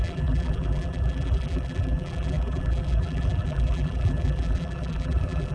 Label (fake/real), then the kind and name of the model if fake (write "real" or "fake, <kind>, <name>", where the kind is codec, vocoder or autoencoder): fake, vocoder, BigVGAN v2